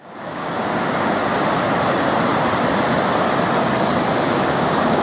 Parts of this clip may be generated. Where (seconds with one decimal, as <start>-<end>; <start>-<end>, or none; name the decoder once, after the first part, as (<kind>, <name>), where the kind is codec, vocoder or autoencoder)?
0.0-1.2 (codec, DAC); 4.2-5.0

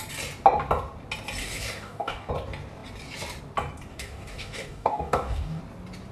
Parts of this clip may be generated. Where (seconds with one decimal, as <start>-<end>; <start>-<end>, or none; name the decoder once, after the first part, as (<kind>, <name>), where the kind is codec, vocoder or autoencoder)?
1.4-2.3 (codec, DAC); 3.9-5.6

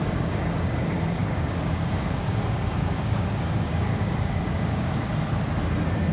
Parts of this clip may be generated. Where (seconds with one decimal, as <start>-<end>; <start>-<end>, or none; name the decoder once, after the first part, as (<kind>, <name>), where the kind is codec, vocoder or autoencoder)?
0.0-5.1 (codec, DAC)

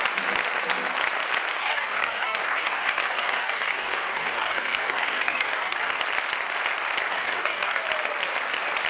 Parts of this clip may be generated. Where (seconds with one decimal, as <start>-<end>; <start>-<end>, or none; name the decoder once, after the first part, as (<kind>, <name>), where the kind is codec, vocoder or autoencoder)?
1.6-6.0 (codec, DAC); 7.1-7.8

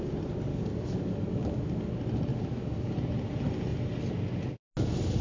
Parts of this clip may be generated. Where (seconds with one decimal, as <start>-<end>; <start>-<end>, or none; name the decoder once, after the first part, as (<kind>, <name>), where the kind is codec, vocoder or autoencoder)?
0.5-1.9 (codec, DAC); 2.3-2.9

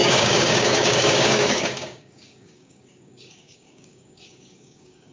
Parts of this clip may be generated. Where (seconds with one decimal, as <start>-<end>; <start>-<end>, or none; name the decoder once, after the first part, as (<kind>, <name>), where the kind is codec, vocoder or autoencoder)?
0.0-5.1 (codec, DAC)

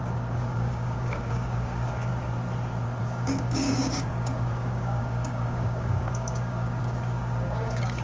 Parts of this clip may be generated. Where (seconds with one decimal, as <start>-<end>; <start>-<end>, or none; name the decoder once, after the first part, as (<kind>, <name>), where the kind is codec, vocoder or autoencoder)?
0.0-2.1 (codec, DAC); 3.0-8.0